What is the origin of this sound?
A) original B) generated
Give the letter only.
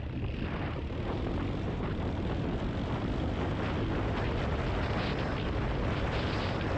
A